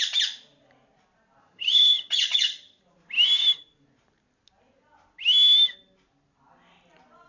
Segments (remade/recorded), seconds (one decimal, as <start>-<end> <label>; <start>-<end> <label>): 0.0-1.4 recorded; 1.4-2.8 remade; 2.8-7.3 recorded